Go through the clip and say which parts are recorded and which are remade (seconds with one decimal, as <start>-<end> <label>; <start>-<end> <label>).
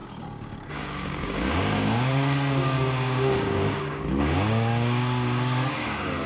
0.0-6.3 remade